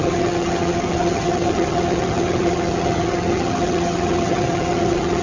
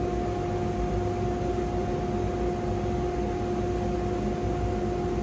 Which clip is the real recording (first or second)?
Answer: second